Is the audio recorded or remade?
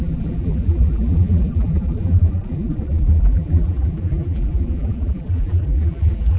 remade